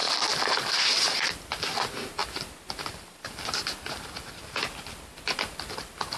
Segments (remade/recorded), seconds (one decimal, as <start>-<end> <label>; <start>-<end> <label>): 0.0-6.2 recorded